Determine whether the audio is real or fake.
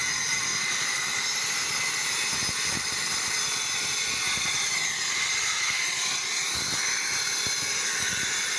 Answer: real